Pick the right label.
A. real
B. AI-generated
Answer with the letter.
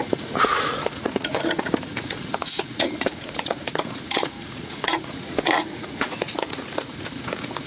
B